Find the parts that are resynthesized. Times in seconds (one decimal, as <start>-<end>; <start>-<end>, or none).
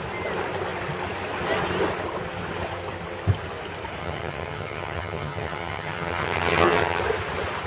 4.0-7.0